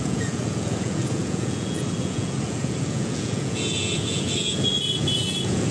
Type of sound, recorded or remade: remade